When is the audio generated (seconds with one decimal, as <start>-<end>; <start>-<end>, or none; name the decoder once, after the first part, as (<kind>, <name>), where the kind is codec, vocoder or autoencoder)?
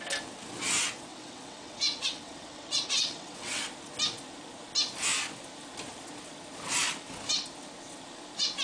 1.1-3.6 (vocoder, WaveNeXt)